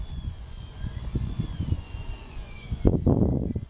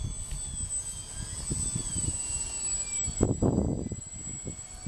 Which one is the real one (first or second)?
second